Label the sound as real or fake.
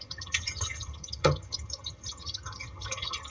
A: fake